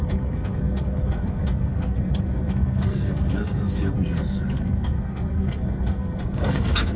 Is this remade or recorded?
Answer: remade